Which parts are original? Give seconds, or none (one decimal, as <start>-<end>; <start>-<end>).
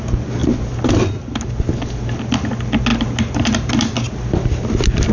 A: 0.0-5.1